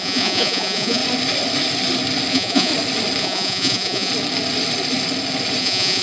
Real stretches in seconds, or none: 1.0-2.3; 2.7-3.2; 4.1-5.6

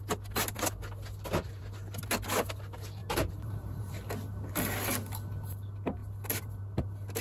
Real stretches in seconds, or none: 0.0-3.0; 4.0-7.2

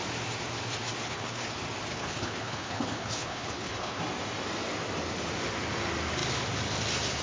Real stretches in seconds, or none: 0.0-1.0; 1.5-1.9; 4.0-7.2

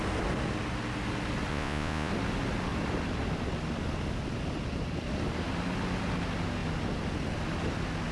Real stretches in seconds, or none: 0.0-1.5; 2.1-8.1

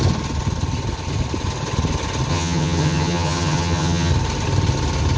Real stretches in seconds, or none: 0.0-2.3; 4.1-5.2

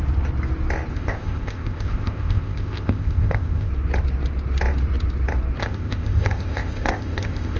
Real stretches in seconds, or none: 0.0-0.9; 3.7-5.6

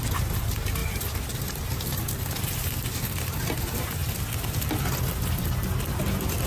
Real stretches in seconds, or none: 0.0-6.5

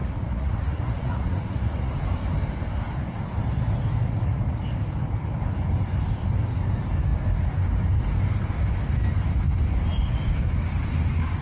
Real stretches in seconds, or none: 1.9-4.0; 4.6-11.4